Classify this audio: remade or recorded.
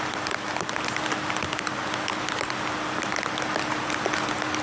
recorded